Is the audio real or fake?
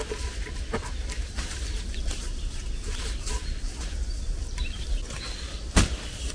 real